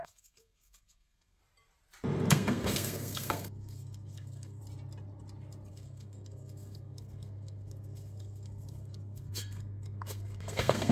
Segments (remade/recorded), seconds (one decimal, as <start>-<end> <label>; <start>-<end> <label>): 0.0-1.4 remade; 1.4-2.3 recorded; 2.3-4.6 remade; 4.6-5.7 recorded; 5.7-10.9 remade